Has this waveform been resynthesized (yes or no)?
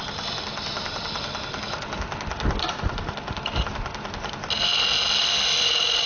no